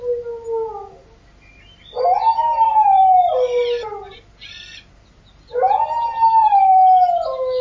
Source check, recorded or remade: recorded